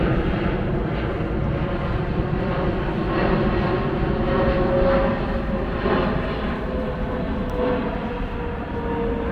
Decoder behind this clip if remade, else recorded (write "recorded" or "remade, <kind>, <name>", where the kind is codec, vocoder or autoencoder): recorded